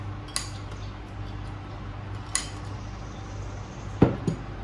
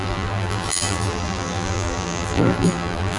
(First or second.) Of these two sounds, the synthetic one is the second